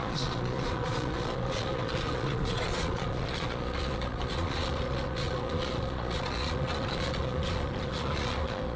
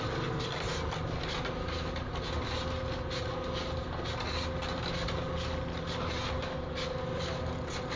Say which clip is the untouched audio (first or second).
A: second